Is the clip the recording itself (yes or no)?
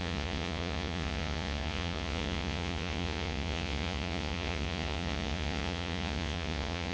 no